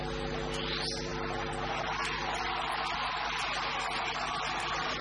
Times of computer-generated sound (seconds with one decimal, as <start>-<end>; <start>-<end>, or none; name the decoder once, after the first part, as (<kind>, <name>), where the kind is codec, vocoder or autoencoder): none